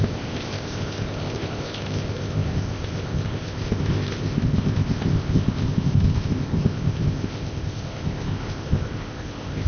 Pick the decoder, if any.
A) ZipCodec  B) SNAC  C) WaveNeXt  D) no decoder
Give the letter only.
A